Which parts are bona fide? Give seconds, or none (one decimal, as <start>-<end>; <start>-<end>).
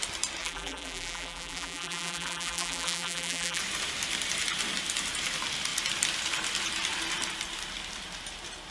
0.0-0.4; 3.6-8.7